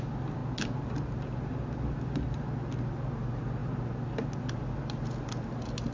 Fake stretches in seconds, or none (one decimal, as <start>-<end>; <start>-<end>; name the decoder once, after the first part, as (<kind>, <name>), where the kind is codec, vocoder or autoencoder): none